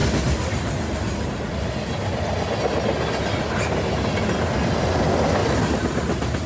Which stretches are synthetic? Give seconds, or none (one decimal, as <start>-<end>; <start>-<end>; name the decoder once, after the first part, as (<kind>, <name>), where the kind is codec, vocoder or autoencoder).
none